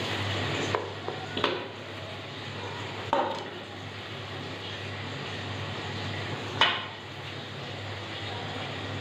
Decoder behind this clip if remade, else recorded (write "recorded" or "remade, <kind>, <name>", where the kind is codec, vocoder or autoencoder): recorded